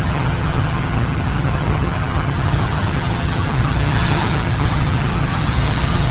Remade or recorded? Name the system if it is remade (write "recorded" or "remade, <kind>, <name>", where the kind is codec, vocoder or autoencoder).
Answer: remade, vocoder, HiFi-GAN